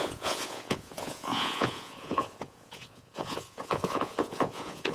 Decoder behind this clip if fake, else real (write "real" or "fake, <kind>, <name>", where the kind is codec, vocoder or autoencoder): fake, vocoder, Vocos